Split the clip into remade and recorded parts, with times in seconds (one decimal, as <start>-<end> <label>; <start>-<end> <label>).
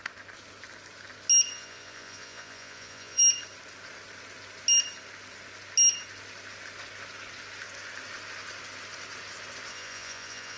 0.0-1.5 recorded; 1.5-3.2 remade; 3.2-9.7 recorded; 9.7-10.6 remade